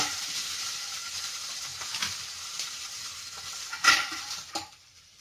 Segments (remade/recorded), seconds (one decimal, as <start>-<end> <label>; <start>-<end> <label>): 0.0-1.7 remade; 1.7-2.7 recorded; 2.7-5.2 remade

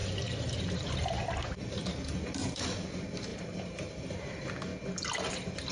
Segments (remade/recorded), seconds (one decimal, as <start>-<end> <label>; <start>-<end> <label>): 0.0-4.7 remade; 4.7-5.3 recorded; 5.3-5.7 remade

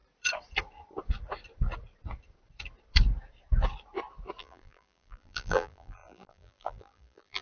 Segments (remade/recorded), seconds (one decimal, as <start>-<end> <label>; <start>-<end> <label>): 0.0-4.4 recorded; 4.4-7.4 remade

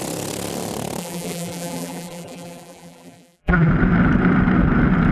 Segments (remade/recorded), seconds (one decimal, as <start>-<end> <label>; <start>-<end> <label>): 0.0-1.0 recorded; 1.0-3.7 remade; 3.7-5.1 recorded

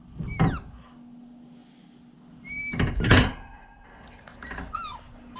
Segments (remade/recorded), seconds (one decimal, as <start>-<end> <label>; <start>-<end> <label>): 0.0-3.3 recorded; 3.3-3.8 remade; 3.8-5.4 recorded